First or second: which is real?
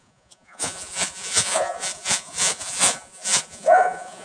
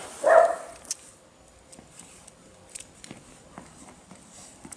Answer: second